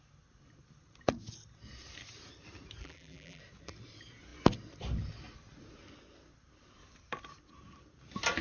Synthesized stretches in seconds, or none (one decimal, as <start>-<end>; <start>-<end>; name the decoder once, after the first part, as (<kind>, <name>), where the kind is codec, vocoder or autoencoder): 2.8-3.4 (vocoder, BigVGAN v2)